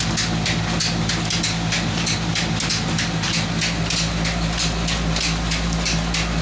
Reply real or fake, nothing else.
real